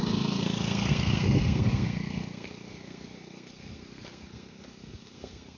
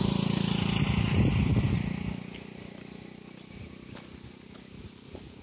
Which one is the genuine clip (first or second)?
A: second